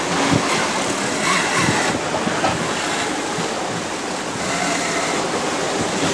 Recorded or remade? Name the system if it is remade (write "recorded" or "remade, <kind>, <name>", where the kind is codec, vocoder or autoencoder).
recorded